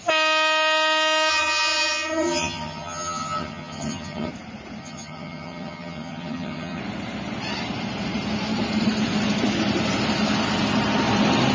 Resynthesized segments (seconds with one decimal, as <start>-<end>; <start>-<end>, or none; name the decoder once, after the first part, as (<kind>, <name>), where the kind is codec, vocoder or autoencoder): 1.3-4.3 (vocoder, HiFi-GAN); 4.8-6.8